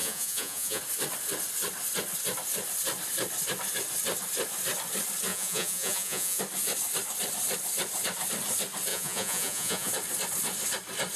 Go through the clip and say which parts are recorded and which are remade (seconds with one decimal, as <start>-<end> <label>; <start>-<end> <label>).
0.0-0.8 remade; 0.8-5.3 recorded; 5.3-6.4 remade; 6.4-8.9 recorded; 8.9-9.9 remade; 9.9-11.2 recorded